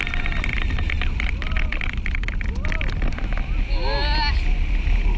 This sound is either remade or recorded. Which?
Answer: recorded